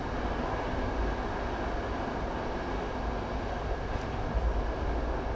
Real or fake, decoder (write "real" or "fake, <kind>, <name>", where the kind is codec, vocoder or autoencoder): real